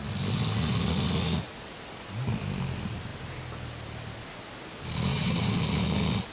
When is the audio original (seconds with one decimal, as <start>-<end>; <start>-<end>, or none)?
0.0-5.1; 5.6-6.3